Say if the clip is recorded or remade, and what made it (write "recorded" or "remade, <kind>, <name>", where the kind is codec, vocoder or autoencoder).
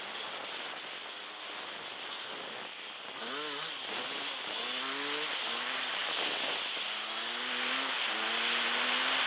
recorded